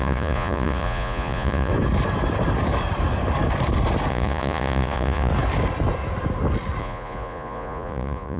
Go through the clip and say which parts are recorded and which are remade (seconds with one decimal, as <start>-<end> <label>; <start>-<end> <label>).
0.0-1.7 remade; 1.7-4.1 recorded; 4.1-5.3 remade; 5.3-6.8 recorded; 6.8-8.4 remade